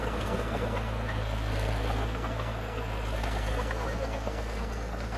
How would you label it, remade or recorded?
remade